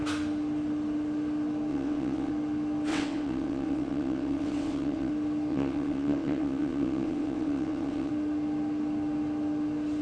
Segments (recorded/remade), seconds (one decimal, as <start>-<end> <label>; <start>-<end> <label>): 0.0-1.7 recorded; 1.7-2.3 remade; 2.3-2.9 recorded; 2.9-5.1 remade; 5.1-5.5 recorded; 5.5-8.1 remade; 8.1-10.0 recorded